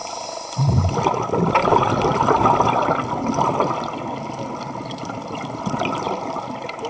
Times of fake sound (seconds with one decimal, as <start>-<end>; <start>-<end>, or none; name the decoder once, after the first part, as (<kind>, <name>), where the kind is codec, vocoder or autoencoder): none